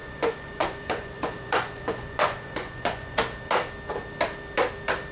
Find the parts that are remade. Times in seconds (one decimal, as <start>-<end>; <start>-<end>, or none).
0.0-3.1